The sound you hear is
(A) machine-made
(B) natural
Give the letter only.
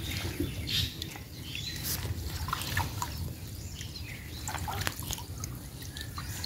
B